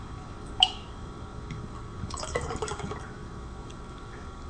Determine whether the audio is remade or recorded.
remade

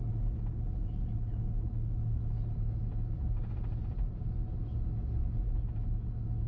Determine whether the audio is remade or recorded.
recorded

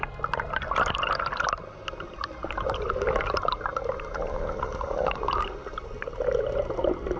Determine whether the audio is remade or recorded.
recorded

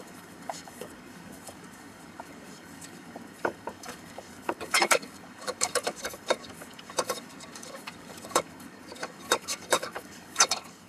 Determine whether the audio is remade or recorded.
remade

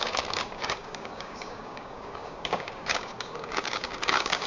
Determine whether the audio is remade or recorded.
remade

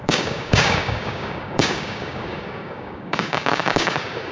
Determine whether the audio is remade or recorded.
remade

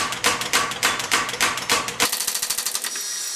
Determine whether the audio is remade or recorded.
recorded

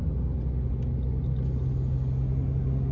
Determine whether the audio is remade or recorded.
recorded